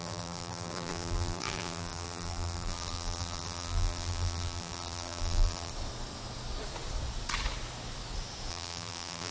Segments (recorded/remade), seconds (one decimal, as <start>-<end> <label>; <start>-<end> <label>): 0.0-5.7 remade; 5.7-8.5 recorded; 8.5-9.3 remade